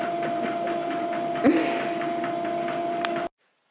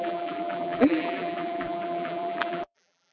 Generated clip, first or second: second